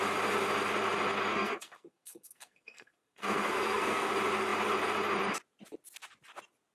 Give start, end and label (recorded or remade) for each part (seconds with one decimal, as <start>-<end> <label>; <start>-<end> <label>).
0.0-1.3 recorded; 1.3-4.1 remade; 4.1-6.7 recorded

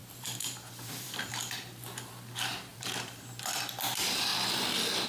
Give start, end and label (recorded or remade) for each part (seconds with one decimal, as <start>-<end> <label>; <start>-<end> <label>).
0.0-1.3 remade; 1.3-2.7 recorded; 2.7-3.6 remade; 3.6-5.1 recorded

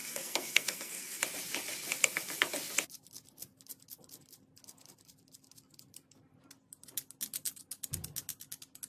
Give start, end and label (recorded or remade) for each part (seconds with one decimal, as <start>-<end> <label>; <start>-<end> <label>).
0.0-1.2 remade; 1.2-8.9 recorded